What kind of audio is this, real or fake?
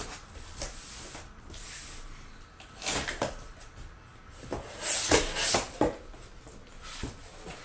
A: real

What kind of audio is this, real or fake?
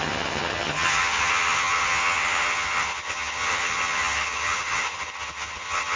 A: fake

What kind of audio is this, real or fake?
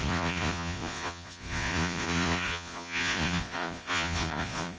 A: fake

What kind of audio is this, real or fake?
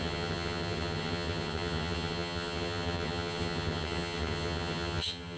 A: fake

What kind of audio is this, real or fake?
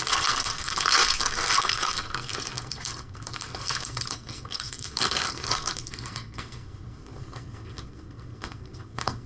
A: fake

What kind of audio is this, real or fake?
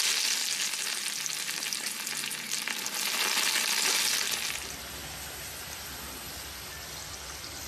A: real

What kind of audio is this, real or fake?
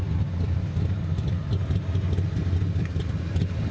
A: real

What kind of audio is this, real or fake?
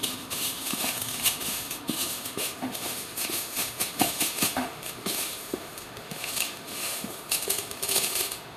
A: fake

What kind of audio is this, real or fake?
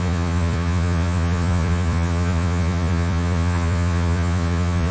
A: fake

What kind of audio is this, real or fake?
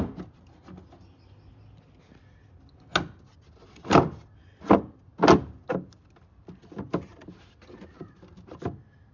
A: real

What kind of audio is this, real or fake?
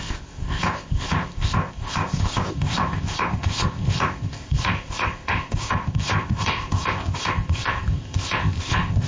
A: fake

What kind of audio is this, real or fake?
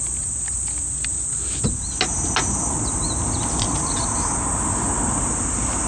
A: real